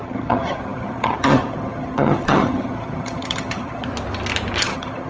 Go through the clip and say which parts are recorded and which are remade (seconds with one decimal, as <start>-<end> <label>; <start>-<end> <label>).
0.0-3.9 remade; 3.9-4.6 recorded; 4.6-5.1 remade